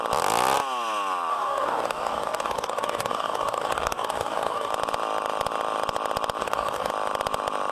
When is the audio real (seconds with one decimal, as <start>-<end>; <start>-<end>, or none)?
0.0-1.3; 4.7-6.4; 6.9-7.7